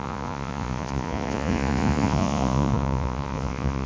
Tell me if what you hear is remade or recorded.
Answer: remade